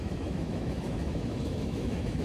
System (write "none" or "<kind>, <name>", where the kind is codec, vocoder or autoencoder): autoencoder, DAC-VAE